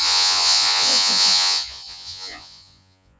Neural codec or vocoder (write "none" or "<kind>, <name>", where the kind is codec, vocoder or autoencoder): vocoder, Vocos